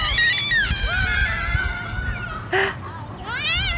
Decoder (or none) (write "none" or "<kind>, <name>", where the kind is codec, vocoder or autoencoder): none